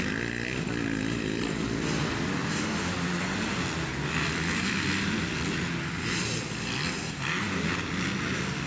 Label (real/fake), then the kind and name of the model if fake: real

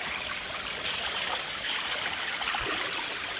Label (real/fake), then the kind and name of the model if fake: real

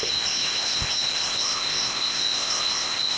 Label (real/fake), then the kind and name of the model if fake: fake, codec, ZipCodec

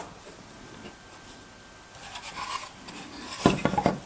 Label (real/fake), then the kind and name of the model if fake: real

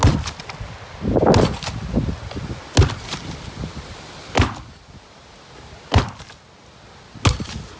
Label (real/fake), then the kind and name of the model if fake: real